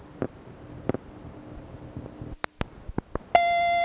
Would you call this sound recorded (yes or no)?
yes